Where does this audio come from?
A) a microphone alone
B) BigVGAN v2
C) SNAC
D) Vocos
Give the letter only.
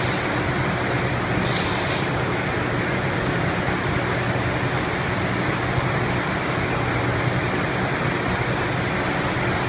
A